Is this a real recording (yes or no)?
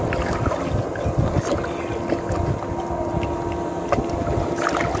yes